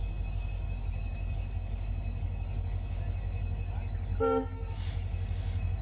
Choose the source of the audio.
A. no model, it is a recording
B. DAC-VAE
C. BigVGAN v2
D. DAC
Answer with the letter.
D